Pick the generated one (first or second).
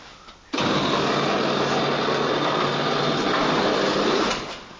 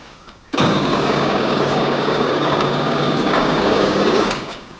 second